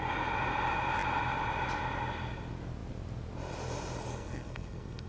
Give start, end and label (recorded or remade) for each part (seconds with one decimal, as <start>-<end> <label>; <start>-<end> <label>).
0.0-4.1 recorded; 4.1-5.1 remade